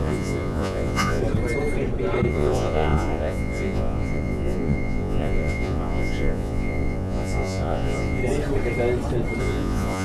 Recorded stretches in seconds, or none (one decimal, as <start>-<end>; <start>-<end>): 1.2-2.3; 8.2-9.4